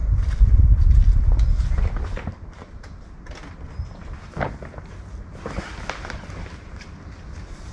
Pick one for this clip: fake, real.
real